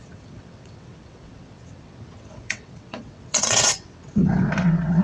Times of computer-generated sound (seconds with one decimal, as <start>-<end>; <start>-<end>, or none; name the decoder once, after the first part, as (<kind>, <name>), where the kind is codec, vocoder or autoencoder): 0.0-5.0 (vocoder, WaveNeXt)